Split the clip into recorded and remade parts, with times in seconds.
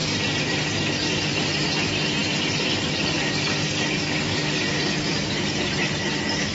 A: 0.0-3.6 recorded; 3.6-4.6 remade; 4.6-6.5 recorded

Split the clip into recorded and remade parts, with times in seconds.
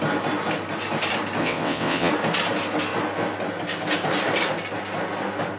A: 0.0-1.4 recorded; 1.4-2.1 remade; 2.1-5.6 recorded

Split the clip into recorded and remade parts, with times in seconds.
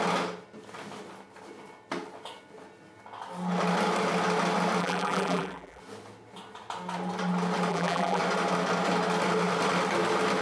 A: 0.0-4.8 recorded; 4.8-5.8 remade; 5.8-7.7 recorded; 7.7-8.2 remade; 8.2-10.4 recorded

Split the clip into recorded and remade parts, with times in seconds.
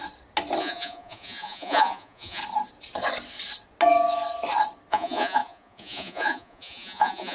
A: 0.0-0.6 recorded; 0.6-2.4 remade; 2.4-4.9 recorded; 4.9-7.3 remade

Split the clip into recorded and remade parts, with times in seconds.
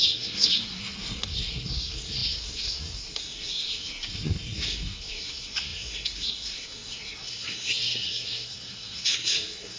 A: 0.0-9.8 remade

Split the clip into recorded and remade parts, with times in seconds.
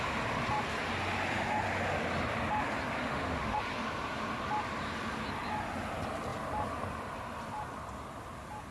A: 0.0-3.0 recorded; 3.0-3.6 remade; 3.6-8.7 recorded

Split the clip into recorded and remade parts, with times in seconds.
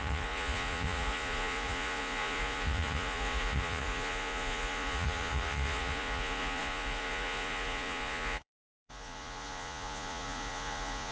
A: 0.0-11.1 remade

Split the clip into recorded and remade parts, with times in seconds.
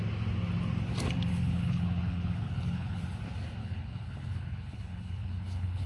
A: 0.0-1.3 recorded; 1.3-3.0 remade; 3.0-3.6 recorded; 3.6-5.9 remade